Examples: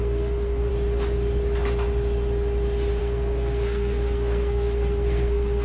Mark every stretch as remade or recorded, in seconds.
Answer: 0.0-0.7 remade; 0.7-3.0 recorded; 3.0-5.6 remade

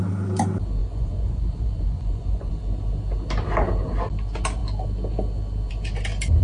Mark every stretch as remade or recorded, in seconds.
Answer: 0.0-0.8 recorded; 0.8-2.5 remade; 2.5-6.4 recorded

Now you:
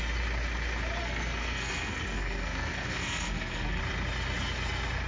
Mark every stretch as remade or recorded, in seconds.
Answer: 0.0-1.0 recorded; 1.0-3.8 remade; 3.8-5.1 recorded

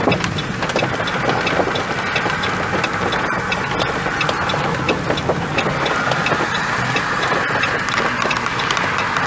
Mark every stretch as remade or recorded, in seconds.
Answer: 0.0-5.5 recorded; 5.5-8.1 remade; 8.1-9.3 recorded